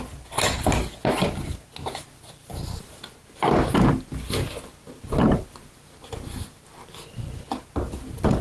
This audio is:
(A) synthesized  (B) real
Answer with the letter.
B